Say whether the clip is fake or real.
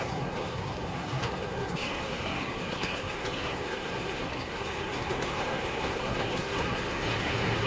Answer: fake